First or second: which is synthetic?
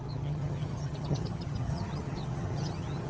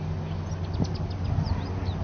first